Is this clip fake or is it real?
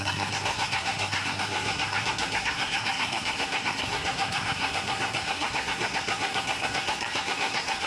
fake